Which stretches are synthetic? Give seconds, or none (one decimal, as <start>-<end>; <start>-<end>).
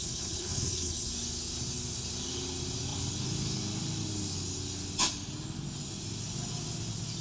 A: 0.0-1.1